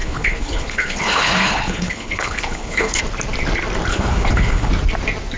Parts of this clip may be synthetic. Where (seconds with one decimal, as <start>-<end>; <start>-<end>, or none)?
0.0-3.0; 3.9-4.7